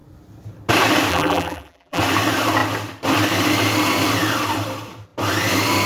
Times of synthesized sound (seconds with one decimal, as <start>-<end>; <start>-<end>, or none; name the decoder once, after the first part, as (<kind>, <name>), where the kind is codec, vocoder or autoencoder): 1.1-2.0 (vocoder, BigVGAN v2)